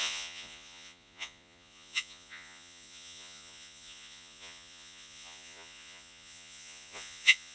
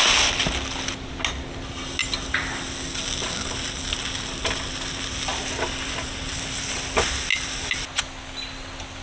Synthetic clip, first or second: first